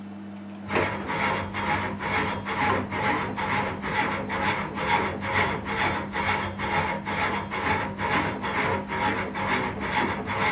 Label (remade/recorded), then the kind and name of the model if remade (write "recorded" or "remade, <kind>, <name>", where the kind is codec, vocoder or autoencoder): recorded